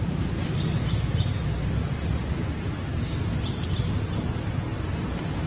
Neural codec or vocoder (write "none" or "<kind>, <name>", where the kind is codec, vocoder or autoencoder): none